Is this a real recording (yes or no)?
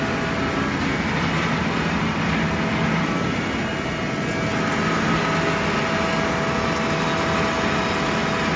yes